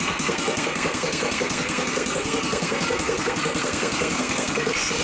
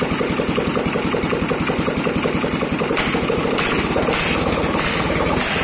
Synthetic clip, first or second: first